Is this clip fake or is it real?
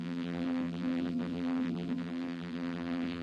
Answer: fake